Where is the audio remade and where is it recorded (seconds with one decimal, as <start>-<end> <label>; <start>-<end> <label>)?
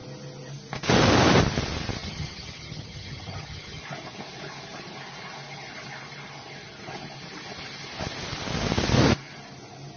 0.0-2.0 recorded; 2.0-3.8 remade; 3.8-10.0 recorded